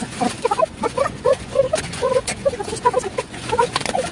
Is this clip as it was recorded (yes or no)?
no